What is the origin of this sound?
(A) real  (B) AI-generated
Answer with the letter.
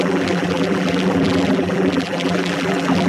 B